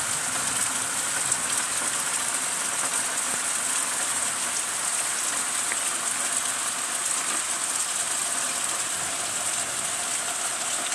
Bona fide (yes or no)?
yes